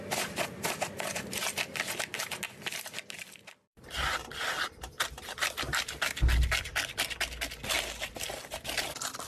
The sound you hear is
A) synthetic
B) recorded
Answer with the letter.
B